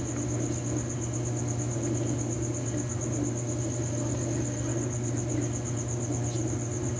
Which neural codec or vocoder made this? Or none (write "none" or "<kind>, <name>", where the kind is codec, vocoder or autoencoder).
none